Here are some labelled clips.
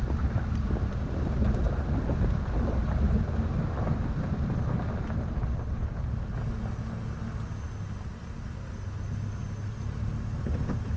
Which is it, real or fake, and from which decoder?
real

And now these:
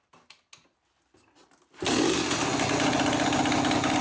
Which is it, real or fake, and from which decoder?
real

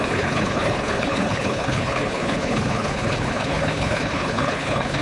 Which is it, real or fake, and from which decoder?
fake, codec, HILCodec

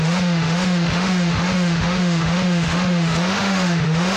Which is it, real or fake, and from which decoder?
fake, autoencoder, DAC-VAE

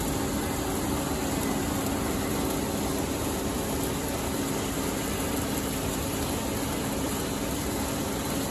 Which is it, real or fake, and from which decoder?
real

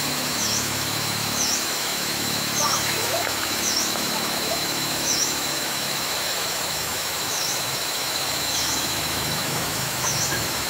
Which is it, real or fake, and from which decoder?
fake, autoencoder, DAC-VAE